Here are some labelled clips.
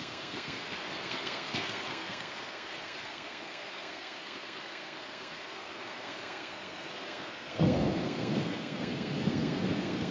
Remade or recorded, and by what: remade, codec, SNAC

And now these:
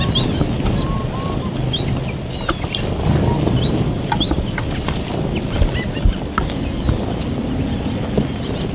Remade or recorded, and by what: recorded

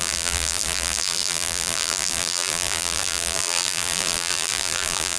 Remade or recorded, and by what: remade, vocoder, BigVGAN v2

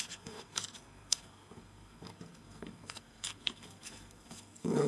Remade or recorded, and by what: remade, codec, SNAC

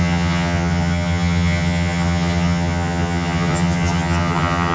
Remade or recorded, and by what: remade, vocoder, HiFi-GAN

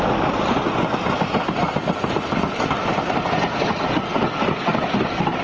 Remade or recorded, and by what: recorded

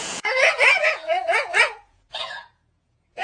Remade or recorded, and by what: remade, vocoder, Vocos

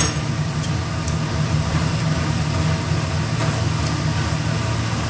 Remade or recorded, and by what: recorded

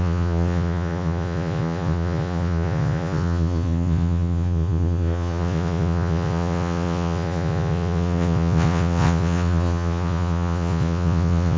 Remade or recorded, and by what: remade, vocoder, Vocos